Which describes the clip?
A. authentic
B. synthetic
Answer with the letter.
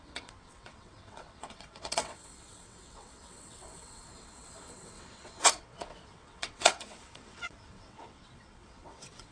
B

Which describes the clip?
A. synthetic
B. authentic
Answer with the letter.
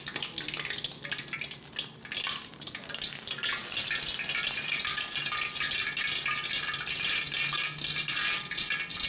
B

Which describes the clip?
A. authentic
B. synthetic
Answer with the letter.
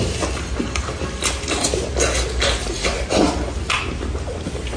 A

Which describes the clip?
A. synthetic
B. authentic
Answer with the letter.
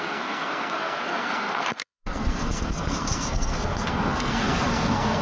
A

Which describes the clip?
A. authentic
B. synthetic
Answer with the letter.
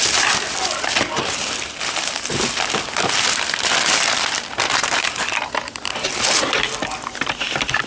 B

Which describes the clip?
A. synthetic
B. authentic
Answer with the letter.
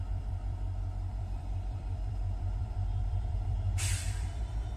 A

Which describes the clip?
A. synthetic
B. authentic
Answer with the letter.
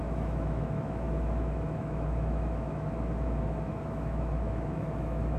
A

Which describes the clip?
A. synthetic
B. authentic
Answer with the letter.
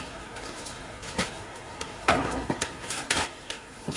A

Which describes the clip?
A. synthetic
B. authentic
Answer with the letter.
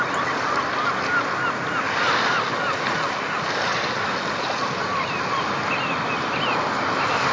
B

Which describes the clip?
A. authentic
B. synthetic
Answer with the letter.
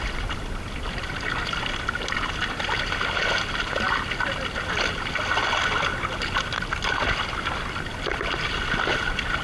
A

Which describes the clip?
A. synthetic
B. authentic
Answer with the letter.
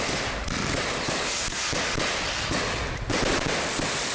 B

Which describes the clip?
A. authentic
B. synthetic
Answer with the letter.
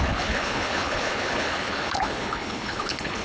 B